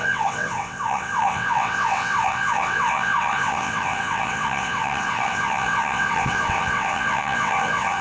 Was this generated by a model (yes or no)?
yes